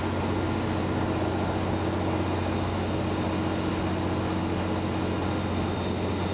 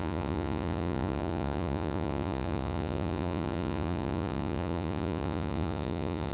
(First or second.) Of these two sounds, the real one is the first